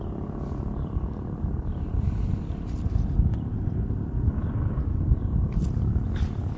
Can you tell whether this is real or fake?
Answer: real